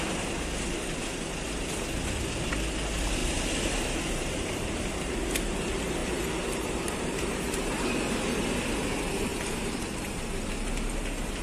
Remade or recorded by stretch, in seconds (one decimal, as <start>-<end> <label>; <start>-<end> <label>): 0.0-3.2 recorded; 3.2-4.9 remade; 4.9-6.0 recorded; 6.0-7.6 remade; 7.6-9.3 recorded; 9.3-10.5 remade; 10.5-11.4 recorded